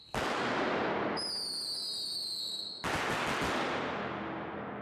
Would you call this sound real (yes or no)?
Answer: yes